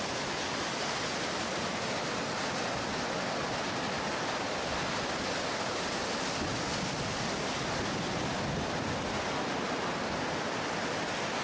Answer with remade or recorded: recorded